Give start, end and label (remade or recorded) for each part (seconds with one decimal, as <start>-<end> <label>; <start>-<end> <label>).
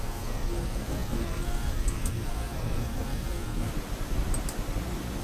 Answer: 0.0-3.7 remade; 3.7-5.2 recorded